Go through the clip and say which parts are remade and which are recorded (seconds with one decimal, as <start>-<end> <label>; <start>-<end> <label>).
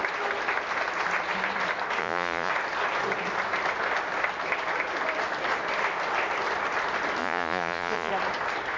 0.0-2.0 recorded; 2.0-2.5 remade; 2.5-7.2 recorded; 7.2-8.1 remade; 8.1-8.8 recorded